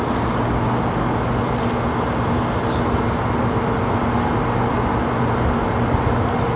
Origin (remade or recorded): recorded